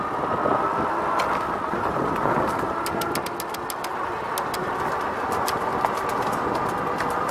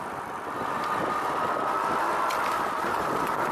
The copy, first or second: second